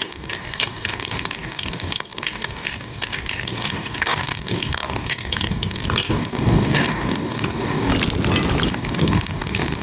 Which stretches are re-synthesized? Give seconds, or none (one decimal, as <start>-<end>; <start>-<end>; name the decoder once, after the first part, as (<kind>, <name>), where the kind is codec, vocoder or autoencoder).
0.0-7.9 (codec, DAC); 8.7-9.8